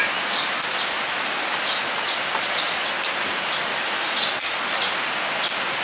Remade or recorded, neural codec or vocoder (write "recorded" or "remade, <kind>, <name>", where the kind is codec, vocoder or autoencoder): recorded